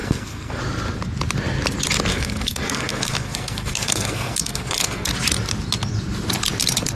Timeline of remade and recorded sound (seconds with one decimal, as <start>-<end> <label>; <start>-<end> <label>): 0.0-0.6 remade; 0.6-2.1 recorded; 2.1-5.1 remade; 5.1-6.9 recorded